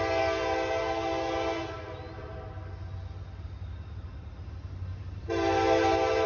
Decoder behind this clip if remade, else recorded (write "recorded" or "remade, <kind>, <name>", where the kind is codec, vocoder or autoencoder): recorded